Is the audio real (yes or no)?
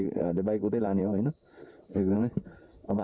yes